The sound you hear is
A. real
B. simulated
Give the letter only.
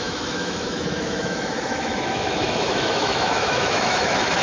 B